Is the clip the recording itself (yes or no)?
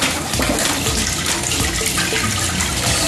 yes